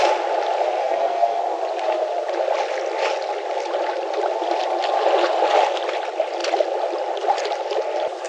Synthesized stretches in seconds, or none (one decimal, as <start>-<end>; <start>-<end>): 0.8-1.4